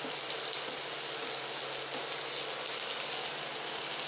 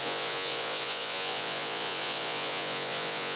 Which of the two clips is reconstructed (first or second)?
second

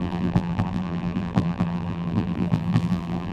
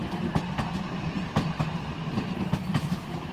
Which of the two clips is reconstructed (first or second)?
first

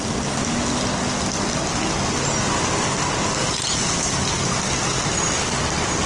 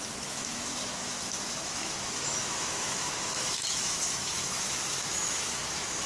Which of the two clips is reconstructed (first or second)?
second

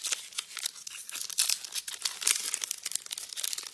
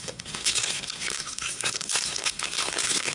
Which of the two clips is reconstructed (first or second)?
second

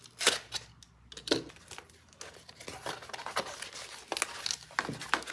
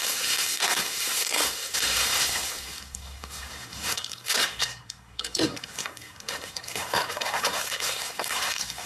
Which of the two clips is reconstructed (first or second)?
second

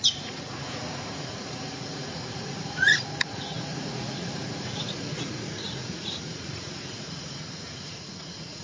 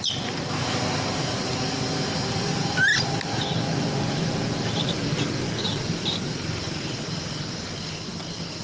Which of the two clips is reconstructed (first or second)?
first